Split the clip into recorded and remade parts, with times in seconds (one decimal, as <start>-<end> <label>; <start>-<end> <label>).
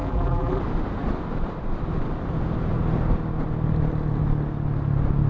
0.0-0.6 remade; 0.6-5.3 recorded